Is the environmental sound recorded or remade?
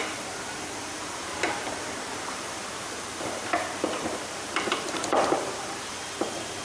remade